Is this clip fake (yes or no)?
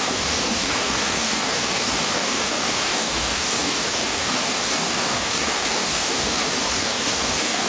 yes